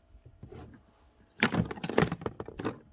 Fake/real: real